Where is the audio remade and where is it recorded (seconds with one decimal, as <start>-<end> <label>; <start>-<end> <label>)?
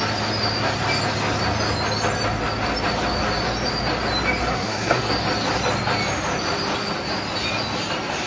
0.0-4.4 recorded; 4.4-5.1 remade; 5.1-8.3 recorded